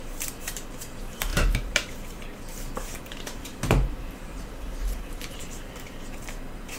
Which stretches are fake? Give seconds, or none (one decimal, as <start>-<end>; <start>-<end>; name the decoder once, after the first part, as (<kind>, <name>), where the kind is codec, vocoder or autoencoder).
0.0-6.8 (vocoder, BigVGAN v2)